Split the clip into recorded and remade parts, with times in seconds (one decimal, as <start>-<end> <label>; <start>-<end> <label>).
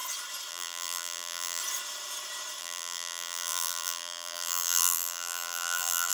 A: 0.0-0.5 recorded; 0.5-1.6 remade; 1.6-2.6 recorded; 2.6-6.1 remade